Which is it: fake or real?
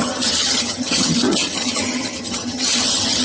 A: fake